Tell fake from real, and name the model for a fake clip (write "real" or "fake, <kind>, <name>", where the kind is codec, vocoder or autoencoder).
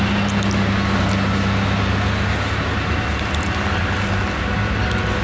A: real